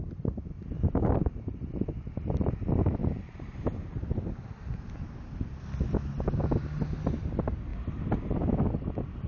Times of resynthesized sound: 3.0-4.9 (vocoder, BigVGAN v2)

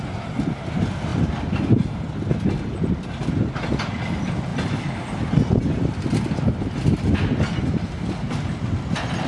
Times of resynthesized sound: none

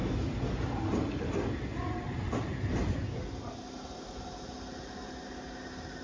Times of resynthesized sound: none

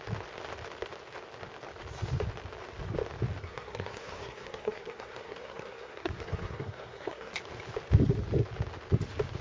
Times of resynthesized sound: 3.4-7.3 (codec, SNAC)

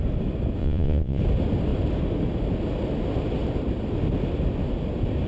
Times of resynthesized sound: 0.6-1.2 (vocoder, Vocos)